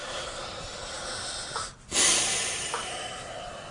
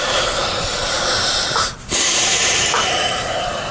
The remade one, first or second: second